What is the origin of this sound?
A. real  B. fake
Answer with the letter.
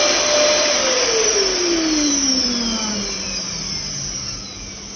B